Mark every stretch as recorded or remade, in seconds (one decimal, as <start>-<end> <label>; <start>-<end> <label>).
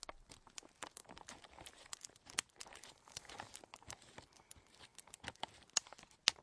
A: 0.0-1.0 recorded; 1.0-3.9 remade; 3.9-4.9 recorded; 4.9-6.0 remade; 6.0-6.4 recorded